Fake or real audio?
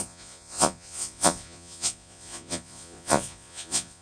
fake